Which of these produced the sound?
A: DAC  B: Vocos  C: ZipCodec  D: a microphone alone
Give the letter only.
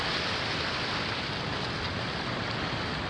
D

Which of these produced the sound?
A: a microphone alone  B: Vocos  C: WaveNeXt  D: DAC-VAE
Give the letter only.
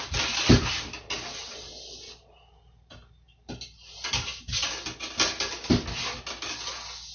A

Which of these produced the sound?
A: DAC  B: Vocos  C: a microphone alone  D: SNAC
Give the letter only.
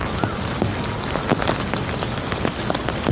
C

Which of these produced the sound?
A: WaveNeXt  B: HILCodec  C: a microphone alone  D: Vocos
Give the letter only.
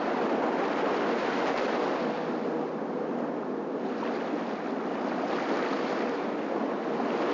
C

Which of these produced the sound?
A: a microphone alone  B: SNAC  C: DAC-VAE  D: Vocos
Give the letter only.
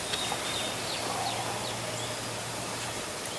A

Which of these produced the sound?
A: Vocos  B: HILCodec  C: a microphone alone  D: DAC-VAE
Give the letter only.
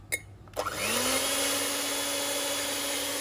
C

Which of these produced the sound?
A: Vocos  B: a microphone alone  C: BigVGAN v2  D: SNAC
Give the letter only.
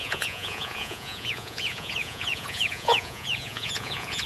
A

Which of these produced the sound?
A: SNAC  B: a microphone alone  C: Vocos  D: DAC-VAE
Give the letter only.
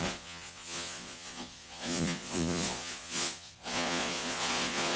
C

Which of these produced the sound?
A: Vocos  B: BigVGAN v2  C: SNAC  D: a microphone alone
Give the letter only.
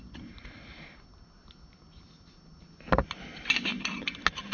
D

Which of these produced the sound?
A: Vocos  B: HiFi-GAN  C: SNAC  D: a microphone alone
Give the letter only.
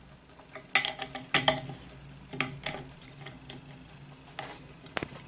D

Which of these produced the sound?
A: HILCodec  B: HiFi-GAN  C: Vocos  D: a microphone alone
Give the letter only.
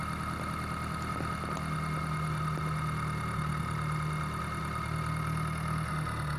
D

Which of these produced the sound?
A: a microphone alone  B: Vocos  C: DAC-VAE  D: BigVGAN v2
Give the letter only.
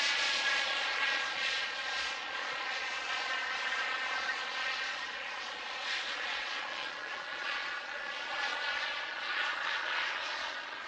B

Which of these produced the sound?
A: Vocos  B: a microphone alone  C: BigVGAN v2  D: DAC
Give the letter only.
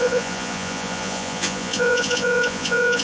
A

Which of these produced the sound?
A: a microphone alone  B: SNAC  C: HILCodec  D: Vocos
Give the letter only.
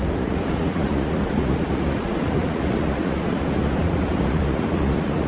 D